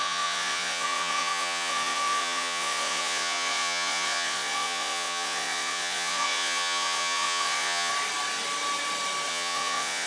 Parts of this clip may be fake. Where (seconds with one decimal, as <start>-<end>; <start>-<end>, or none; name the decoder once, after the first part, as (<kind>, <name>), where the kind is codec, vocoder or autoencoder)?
0.0-7.9 (vocoder, Vocos); 9.3-10.1